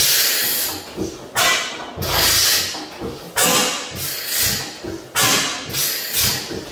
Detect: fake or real real